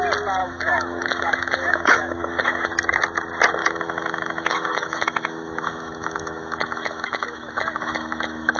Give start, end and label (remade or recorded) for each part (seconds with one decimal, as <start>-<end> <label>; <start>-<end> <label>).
0.0-0.4 recorded; 0.4-2.7 remade; 2.7-3.6 recorded; 3.6-8.6 remade